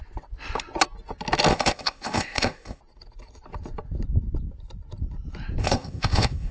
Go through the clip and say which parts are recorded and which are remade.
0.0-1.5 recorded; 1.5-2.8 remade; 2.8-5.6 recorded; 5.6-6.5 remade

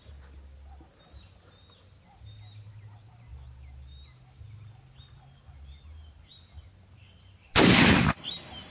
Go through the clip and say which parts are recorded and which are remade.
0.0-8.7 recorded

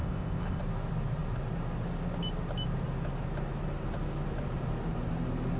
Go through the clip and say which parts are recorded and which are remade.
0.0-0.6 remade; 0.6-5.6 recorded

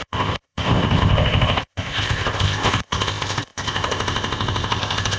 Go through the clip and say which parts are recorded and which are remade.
0.0-5.2 remade

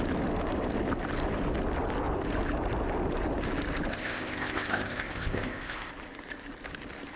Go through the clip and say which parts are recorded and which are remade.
0.0-3.9 recorded; 3.9-5.9 remade; 5.9-7.2 recorded

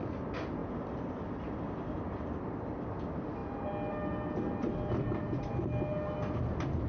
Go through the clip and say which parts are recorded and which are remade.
0.0-6.9 recorded